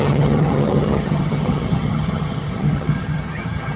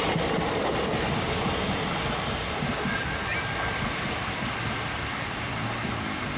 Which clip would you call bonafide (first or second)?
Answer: second